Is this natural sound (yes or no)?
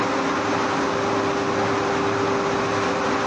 yes